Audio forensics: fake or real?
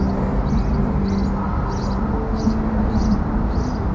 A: real